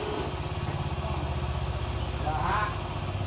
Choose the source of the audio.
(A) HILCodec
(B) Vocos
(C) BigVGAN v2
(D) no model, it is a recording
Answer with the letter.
D